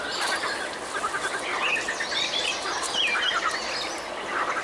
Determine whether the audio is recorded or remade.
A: recorded